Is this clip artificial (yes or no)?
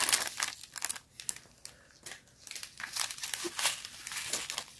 no